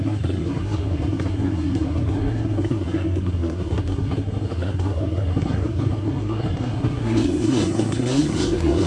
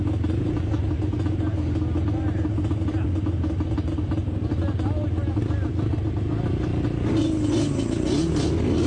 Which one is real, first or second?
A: second